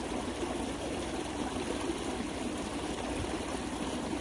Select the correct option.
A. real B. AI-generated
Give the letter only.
A